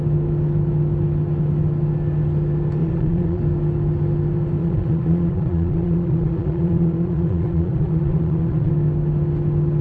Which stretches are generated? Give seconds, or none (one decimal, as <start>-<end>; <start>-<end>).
2.8-3.4; 4.6-8.7